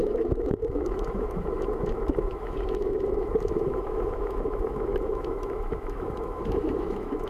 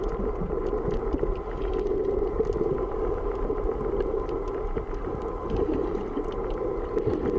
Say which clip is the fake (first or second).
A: first